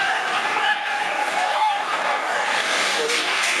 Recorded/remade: remade